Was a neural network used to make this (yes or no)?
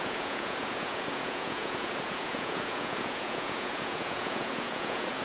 yes